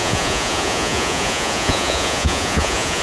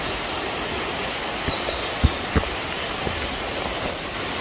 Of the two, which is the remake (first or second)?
first